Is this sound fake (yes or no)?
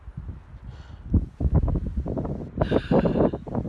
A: no